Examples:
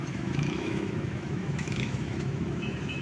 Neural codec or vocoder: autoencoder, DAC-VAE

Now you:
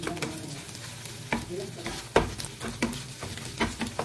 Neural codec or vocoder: none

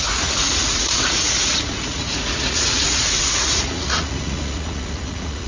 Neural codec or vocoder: vocoder, Vocos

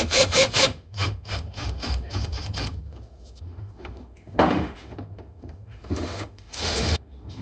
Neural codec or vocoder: autoencoder, DAC-VAE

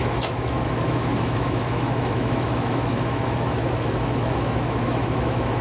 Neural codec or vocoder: autoencoder, DAC-VAE